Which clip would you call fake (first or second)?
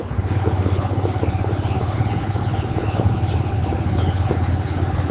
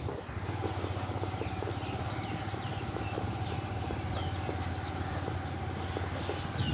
first